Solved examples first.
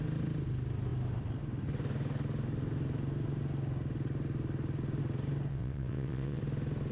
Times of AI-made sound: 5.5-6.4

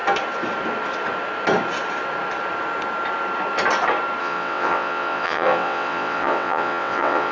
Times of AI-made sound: 4.2-7.3

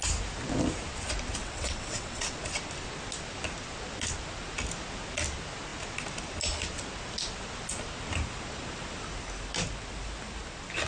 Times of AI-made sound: 1.4-2.4

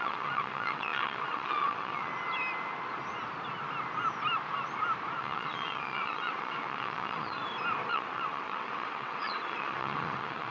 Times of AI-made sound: 0.0-2.1; 5.2-7.4; 7.9-10.5

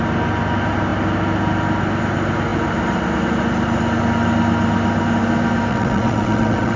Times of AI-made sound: 5.7-6.8

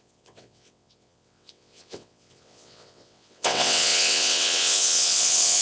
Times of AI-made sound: 0.0-5.6